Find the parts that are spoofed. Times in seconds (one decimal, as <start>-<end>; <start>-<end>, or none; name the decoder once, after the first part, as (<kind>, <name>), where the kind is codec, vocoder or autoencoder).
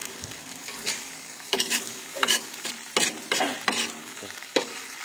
0.0-2.7 (codec, DAC); 4.0-5.0